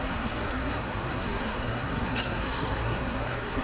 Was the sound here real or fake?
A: fake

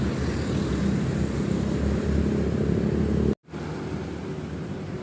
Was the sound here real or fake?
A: real